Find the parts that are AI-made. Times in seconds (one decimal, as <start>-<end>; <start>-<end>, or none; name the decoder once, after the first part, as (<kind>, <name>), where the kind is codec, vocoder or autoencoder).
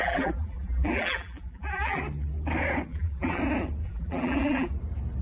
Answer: 0.0-2.0 (vocoder, BigVGAN v2); 2.9-3.4; 3.8-4.7